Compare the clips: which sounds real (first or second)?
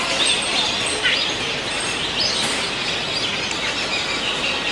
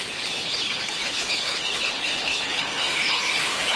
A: first